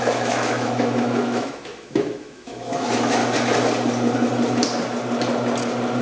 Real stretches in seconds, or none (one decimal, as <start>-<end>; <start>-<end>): 3.2-6.0